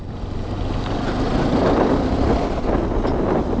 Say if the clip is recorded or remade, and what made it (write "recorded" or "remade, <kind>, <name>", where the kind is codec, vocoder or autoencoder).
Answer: recorded